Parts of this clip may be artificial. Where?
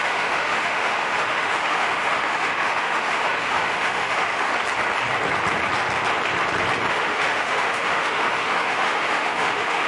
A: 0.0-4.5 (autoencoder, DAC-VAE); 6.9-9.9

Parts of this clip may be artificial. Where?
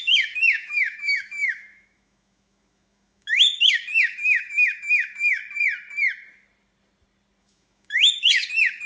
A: 0.0-5.4 (autoencoder, DAC-VAE); 7.4-8.9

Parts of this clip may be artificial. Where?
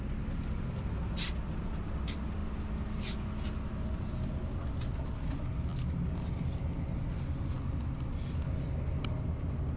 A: none